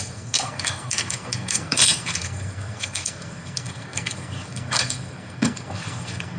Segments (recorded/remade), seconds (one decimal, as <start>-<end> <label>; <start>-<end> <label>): 0.0-6.4 remade

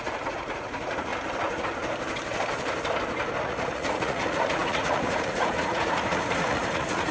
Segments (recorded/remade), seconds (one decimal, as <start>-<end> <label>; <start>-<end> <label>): 0.0-1.1 remade; 1.1-3.4 recorded; 3.4-7.1 remade

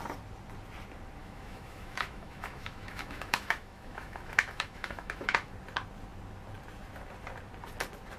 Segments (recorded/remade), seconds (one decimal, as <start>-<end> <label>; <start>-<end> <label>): 0.0-1.2 recorded; 1.2-5.5 remade; 5.5-8.2 recorded

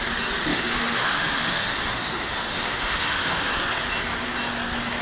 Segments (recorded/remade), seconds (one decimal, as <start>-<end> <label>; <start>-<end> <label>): 0.0-0.5 recorded; 0.5-3.5 remade; 3.5-5.0 recorded

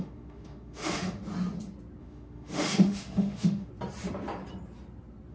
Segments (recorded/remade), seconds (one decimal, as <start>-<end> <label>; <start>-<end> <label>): 0.0-1.2 remade; 1.2-2.0 recorded; 2.0-3.7 remade; 3.7-5.3 recorded

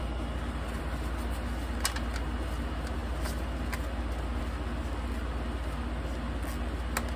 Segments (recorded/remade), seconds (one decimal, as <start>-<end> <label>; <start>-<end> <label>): 0.0-7.2 recorded

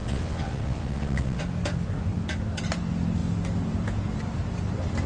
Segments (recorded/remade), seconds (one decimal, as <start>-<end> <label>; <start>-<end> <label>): 0.0-1.4 remade; 1.4-5.1 recorded